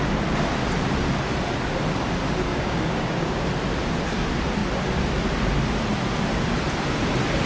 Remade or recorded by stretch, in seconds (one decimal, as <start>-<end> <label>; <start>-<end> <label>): 0.0-2.5 recorded; 2.5-3.5 remade; 3.5-7.5 recorded